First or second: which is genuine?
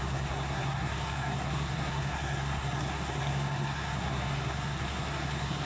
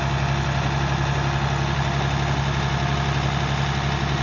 second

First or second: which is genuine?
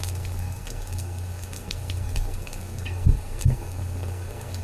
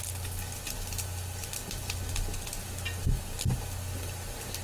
second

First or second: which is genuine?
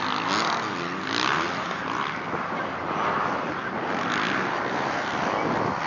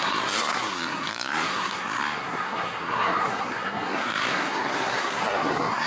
first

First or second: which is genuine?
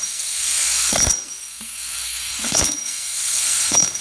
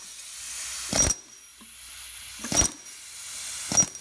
second